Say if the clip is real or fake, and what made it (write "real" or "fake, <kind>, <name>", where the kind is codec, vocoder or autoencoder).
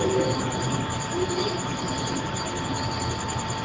real